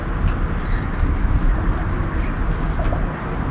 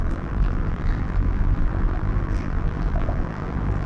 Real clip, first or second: first